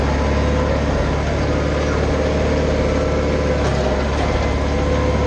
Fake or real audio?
real